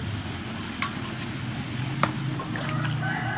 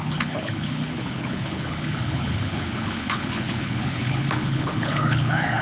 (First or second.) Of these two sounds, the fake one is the second